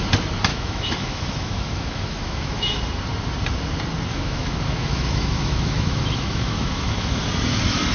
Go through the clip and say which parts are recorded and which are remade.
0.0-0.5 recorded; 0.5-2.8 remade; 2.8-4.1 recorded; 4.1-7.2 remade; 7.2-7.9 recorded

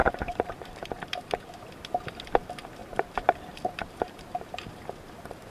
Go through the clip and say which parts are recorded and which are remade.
0.0-1.5 remade; 1.5-2.8 recorded; 2.8-4.7 remade; 4.7-5.5 recorded

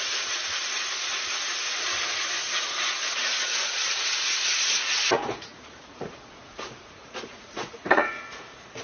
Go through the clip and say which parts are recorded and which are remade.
0.0-0.4 remade; 0.4-2.7 recorded; 2.7-8.8 remade

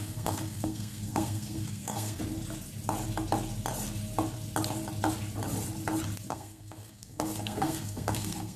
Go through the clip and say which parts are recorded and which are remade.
0.0-2.2 remade; 2.2-6.3 recorded; 6.3-8.6 remade

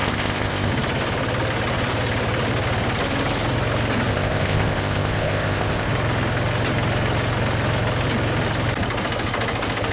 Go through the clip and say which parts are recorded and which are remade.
0.0-0.7 remade; 0.7-4.1 recorded; 4.1-5.9 remade; 5.9-9.9 recorded

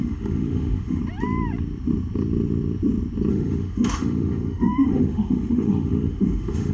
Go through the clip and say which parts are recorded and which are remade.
0.0-1.0 remade; 1.0-3.3 recorded; 3.3-6.7 remade

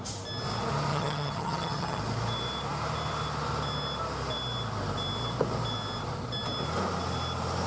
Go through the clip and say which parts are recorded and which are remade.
0.0-0.9 recorded; 0.9-2.0 remade; 2.0-7.7 recorded

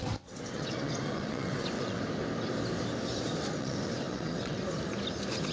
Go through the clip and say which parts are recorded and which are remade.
0.0-2.0 remade; 2.0-3.6 recorded; 3.6-4.6 remade; 4.6-5.5 recorded